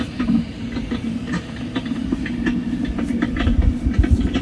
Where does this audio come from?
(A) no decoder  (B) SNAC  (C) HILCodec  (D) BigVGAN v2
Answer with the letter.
D